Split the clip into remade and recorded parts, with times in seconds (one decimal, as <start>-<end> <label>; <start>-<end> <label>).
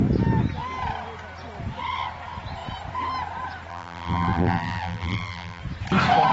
0.0-3.7 recorded; 3.7-5.6 remade; 5.6-6.3 recorded